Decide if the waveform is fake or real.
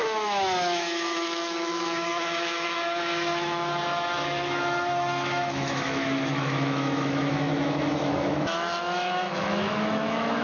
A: fake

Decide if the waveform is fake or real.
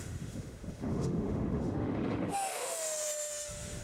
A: fake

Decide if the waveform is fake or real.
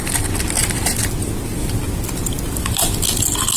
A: real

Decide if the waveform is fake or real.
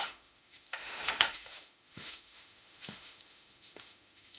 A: fake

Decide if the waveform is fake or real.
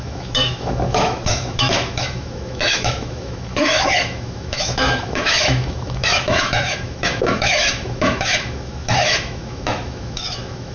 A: fake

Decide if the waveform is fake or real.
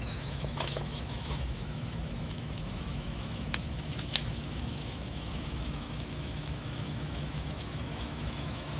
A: fake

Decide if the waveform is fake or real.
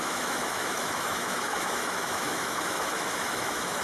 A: fake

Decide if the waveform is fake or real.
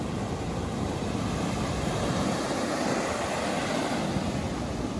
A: real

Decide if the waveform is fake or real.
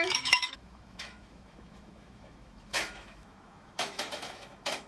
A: fake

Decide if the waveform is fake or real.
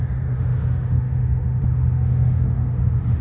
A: fake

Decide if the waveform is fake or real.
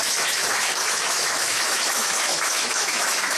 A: fake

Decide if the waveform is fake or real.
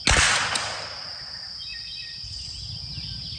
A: real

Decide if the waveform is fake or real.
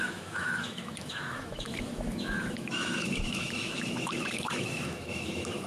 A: fake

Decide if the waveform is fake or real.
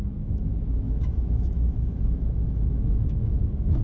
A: fake